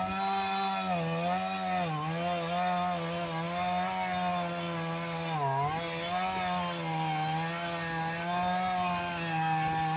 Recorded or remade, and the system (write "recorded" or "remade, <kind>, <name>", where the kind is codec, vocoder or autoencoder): recorded